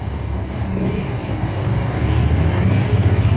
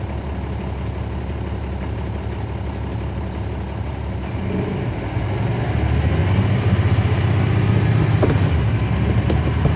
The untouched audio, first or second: second